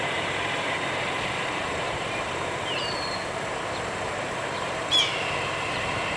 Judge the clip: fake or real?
fake